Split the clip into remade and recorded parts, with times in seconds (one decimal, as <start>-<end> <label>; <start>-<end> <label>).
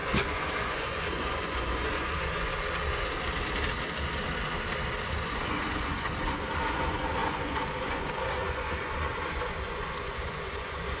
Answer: 0.0-2.5 remade; 2.5-5.1 recorded; 5.1-11.0 remade